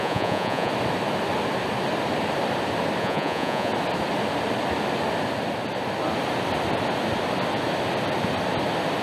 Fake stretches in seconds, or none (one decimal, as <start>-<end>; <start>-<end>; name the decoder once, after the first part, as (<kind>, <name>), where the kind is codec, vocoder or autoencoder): 0.0-0.7 (vocoder, Vocos); 3.0-3.7